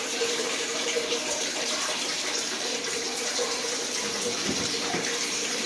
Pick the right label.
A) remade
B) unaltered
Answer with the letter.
A